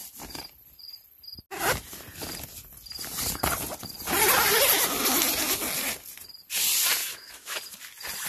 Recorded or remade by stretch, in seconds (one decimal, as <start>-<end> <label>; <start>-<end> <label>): 0.0-7.0 recorded; 7.0-7.6 remade; 7.6-8.3 recorded